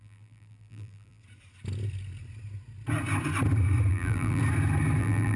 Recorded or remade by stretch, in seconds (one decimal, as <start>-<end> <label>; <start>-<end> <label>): 0.0-1.2 remade; 1.2-3.9 recorded; 3.9-4.4 remade; 4.4-5.0 recorded; 5.0-5.4 remade